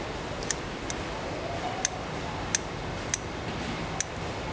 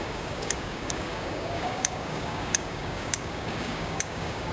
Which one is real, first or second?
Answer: first